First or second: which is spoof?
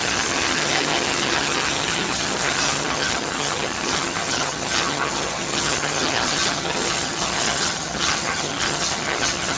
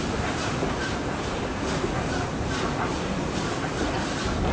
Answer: first